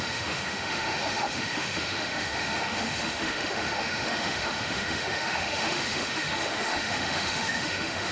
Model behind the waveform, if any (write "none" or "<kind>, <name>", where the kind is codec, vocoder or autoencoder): autoencoder, DAC-VAE